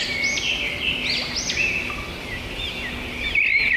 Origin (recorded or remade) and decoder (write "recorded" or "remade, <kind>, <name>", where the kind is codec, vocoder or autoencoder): recorded